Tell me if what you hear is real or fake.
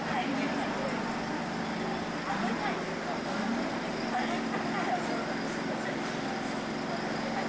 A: real